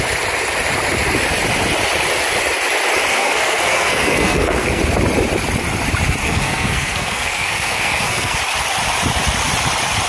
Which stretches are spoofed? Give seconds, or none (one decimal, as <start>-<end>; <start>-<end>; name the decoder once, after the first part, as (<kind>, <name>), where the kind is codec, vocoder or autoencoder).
3.1-4.8 (codec, SNAC); 6.2-8.4